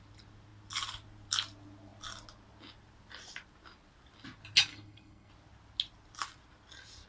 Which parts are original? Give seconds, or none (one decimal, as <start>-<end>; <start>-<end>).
0.0-4.7; 5.3-7.1